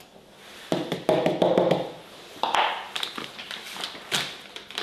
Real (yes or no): yes